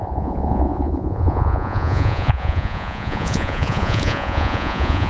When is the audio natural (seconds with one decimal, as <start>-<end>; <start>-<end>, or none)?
none